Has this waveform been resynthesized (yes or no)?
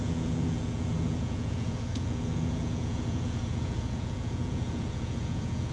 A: yes